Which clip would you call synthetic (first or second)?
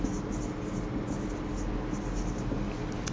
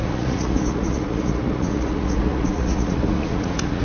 second